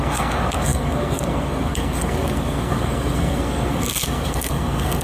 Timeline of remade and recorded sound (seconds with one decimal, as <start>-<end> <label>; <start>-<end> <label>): 0.0-5.0 remade